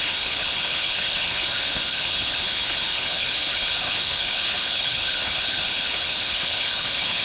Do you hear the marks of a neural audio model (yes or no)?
yes